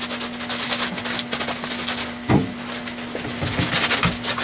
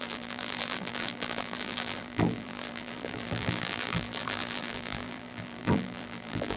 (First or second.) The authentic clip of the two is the first